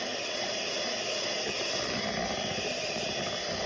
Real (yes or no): yes